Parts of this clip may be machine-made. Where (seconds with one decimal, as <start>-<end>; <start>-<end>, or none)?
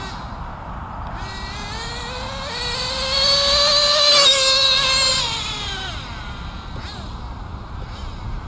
0.0-0.8; 5.1-8.5